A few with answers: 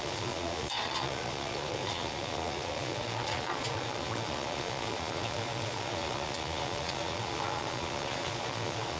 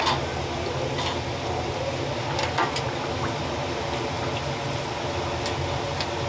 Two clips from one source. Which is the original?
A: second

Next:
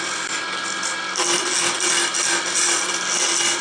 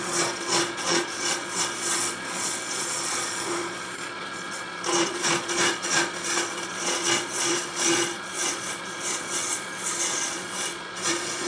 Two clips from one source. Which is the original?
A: first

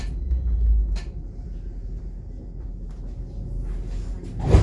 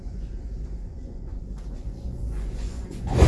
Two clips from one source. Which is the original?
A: first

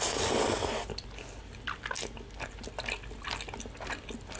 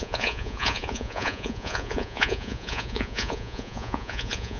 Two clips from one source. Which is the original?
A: first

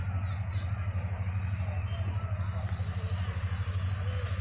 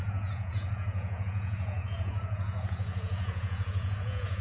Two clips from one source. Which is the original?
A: first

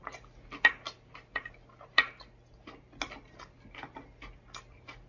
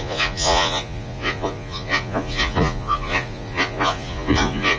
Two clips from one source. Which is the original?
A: first